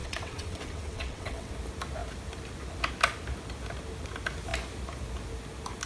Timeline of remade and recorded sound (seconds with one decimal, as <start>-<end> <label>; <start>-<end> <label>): 0.0-1.5 remade; 1.5-5.9 recorded